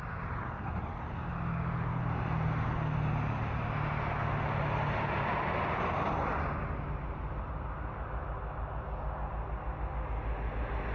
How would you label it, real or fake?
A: real